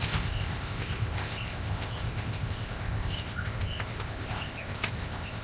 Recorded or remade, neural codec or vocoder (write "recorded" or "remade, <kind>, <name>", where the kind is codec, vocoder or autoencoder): remade, codec, ZipCodec